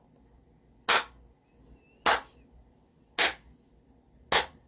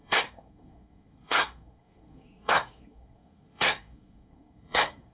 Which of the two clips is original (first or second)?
first